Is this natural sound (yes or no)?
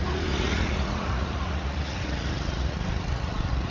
no